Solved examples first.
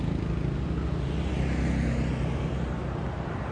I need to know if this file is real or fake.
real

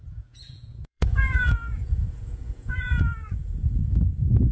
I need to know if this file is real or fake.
fake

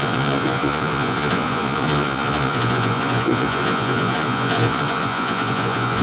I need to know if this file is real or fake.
fake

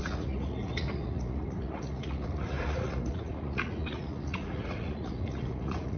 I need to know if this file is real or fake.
fake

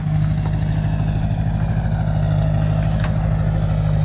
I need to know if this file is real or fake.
real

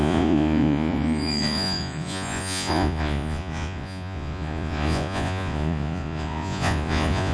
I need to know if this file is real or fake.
fake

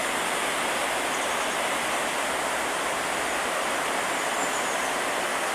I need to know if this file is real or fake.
real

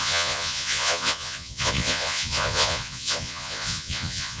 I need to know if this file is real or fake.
fake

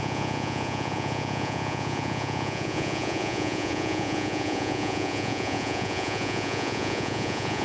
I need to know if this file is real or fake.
fake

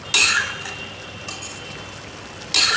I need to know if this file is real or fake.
real